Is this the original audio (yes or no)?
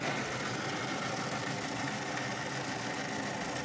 yes